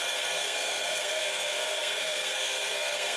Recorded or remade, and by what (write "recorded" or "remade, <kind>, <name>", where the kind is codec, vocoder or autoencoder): remade, codec, SNAC